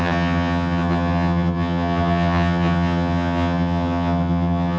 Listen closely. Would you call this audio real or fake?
fake